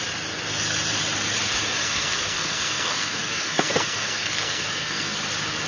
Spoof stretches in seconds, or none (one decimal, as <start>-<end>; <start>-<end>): 1.8-5.2

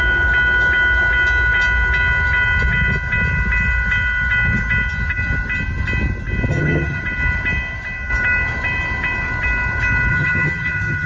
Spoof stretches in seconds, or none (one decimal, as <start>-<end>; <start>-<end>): 6.5-7.0; 10.1-11.1